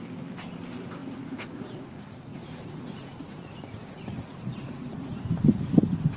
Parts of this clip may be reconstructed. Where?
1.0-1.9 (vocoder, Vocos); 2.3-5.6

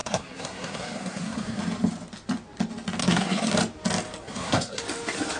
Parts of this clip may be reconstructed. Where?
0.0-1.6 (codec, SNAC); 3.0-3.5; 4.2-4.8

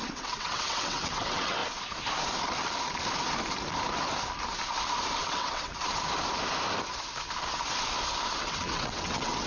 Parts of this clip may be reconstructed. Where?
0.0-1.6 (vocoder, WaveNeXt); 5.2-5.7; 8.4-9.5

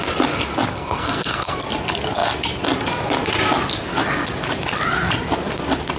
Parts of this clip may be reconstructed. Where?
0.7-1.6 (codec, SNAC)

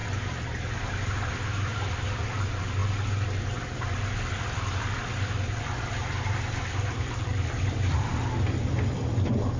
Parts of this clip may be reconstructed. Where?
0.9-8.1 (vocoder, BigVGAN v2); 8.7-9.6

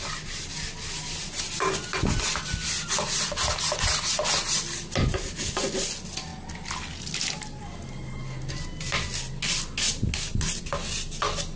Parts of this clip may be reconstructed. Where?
none